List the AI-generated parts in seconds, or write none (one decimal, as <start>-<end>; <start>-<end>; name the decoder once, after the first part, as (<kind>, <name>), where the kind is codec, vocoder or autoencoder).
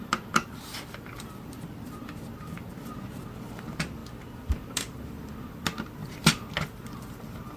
0.0-6.0 (vocoder, BigVGAN v2); 6.6-7.6